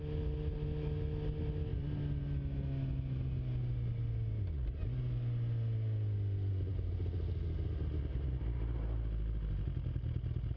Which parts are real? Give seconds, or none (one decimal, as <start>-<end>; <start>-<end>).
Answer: 0.0-10.6